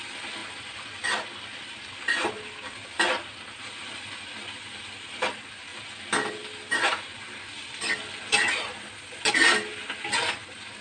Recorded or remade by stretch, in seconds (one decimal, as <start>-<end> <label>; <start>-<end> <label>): 0.0-10.8 recorded